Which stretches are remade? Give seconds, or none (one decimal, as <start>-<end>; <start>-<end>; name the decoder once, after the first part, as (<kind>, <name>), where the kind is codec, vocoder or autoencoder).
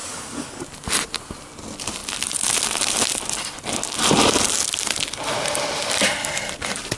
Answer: 0.0-0.6 (codec, DAC)